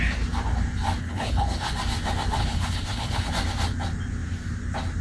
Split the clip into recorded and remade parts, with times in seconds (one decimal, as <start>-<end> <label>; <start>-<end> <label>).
0.0-1.0 recorded; 1.0-1.7 remade; 1.7-2.4 recorded; 2.4-3.3 remade; 3.3-5.0 recorded